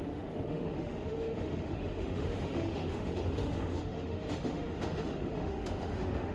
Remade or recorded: remade